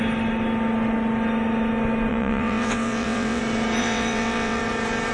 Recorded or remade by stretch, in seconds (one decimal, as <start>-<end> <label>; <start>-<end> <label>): 0.0-2.1 recorded; 2.1-3.4 remade; 3.4-3.8 recorded; 3.8-4.6 remade; 4.6-5.1 recorded

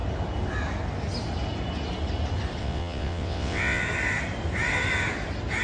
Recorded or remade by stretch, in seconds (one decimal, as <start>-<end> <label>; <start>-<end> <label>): 0.0-2.6 recorded; 2.6-3.8 remade; 3.8-5.6 recorded